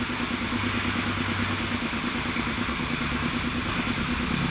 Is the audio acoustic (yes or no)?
yes